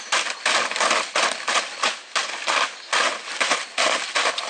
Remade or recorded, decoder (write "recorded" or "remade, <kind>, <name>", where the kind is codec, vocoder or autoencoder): recorded